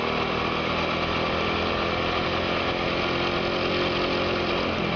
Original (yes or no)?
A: yes